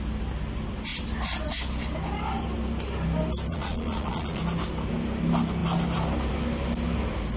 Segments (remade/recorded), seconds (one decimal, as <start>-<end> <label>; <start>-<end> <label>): 0.0-3.5 recorded; 3.5-4.4 remade; 4.4-7.4 recorded